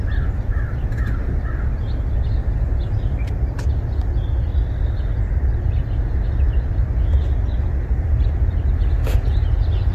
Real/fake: real